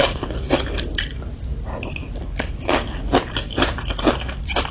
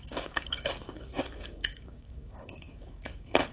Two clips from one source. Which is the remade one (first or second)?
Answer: second